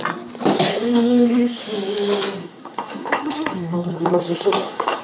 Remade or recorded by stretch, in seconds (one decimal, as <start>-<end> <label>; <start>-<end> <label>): 0.0-0.7 recorded; 0.7-1.6 remade; 1.6-2.4 recorded; 2.4-5.0 remade